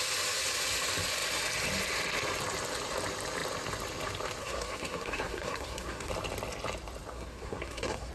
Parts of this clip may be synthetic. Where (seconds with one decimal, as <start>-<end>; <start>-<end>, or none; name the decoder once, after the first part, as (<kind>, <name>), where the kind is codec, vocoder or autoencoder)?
4.4-6.1 (codec, SNAC); 7.1-8.1